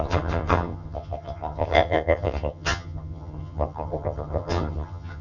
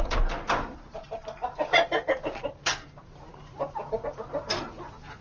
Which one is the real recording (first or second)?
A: second